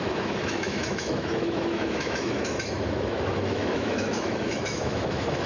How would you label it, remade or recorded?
remade